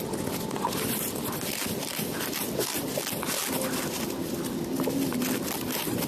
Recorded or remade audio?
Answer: recorded